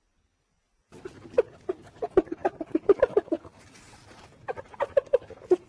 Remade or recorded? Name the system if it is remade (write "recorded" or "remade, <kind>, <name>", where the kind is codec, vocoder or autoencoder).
recorded